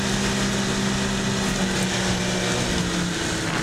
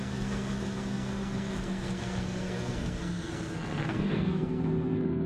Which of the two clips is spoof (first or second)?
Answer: second